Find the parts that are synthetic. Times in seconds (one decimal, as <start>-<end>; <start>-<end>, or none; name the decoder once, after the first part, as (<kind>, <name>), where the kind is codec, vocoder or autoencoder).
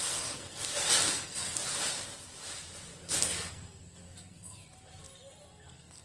0.0-1.6 (codec, SNAC); 3.2-4.6; 5.6-6.0